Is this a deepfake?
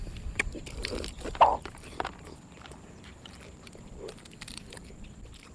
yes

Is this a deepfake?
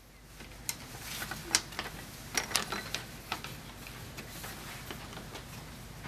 no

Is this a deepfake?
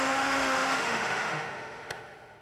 yes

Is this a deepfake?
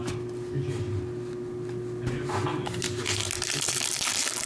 no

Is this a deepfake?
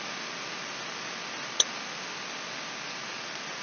no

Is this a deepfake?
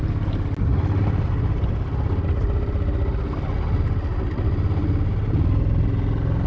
no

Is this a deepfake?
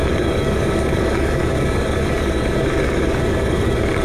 yes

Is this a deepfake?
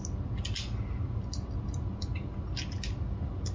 no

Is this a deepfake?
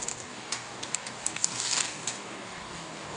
yes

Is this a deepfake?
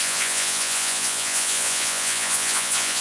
yes